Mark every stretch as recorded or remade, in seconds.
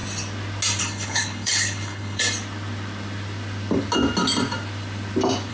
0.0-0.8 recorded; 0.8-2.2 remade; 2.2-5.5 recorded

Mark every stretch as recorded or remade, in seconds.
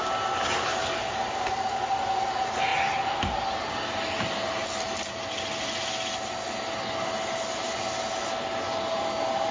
0.0-9.5 recorded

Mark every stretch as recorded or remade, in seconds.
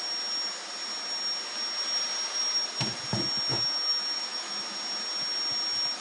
0.0-3.5 recorded; 3.5-4.6 remade; 4.6-6.0 recorded